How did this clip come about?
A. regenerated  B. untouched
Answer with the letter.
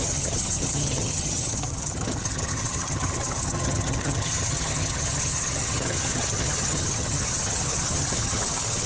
A